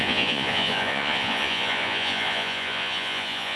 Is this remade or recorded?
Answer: remade